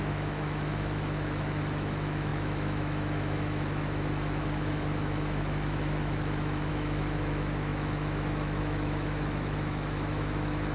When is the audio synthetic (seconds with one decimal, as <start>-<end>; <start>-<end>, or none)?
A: 0.0-10.7